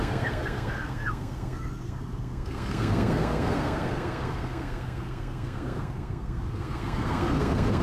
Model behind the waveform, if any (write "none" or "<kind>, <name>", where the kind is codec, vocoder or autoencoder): codec, SNAC